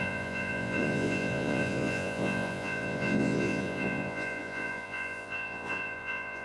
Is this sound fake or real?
fake